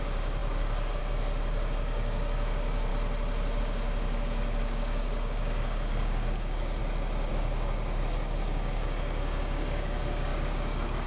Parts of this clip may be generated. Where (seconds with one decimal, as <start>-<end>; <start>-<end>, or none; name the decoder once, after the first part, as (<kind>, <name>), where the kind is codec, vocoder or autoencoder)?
0.0-2.9 (codec, DAC); 3.6-6.8; 7.3-11.1